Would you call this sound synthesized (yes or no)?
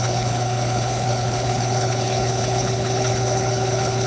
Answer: yes